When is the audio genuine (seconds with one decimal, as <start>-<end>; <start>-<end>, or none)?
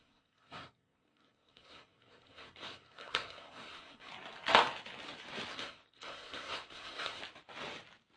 4.1-5.5; 7.2-8.2